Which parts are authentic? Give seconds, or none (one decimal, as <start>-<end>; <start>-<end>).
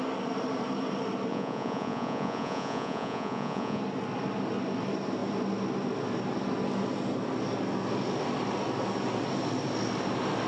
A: 0.0-1.3; 3.8-10.5